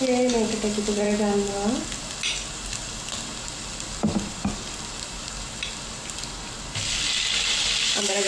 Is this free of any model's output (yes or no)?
yes